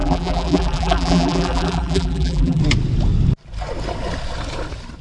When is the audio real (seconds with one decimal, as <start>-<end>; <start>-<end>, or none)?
2.6-5.0